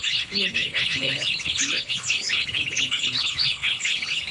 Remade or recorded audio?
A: remade